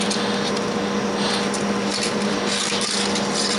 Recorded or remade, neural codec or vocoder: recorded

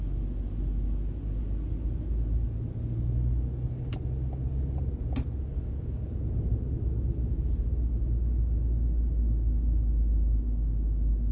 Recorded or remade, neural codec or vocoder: recorded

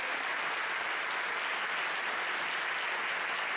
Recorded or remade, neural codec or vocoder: recorded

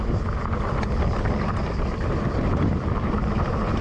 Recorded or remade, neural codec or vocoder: recorded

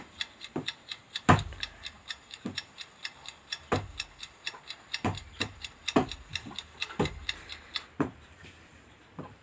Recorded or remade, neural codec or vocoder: remade, vocoder, BigVGAN v2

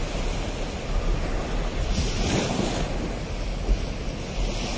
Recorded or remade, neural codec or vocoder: recorded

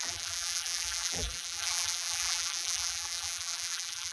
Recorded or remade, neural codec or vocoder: remade, vocoder, BigVGAN v2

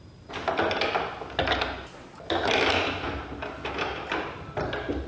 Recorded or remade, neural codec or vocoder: recorded